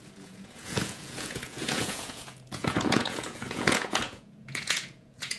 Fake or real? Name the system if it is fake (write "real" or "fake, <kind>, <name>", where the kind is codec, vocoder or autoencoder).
fake, vocoder, Vocos